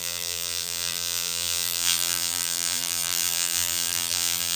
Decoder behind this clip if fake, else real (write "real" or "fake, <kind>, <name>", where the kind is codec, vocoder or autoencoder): fake, vocoder, BigVGAN v2